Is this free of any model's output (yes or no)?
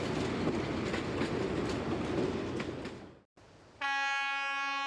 yes